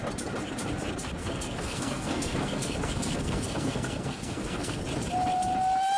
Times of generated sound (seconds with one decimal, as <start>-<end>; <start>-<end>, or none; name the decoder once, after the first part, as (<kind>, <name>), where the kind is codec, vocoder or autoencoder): 1.2-4.8 (codec, SNAC)